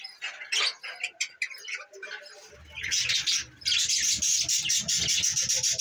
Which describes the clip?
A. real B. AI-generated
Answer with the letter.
A